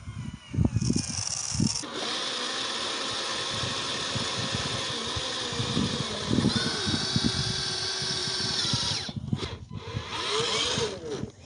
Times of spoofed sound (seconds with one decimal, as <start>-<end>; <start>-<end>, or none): 5.6-6.7; 8.2-8.9